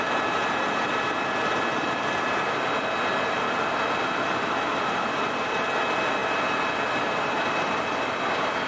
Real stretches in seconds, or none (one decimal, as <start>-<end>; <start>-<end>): 0.0-8.7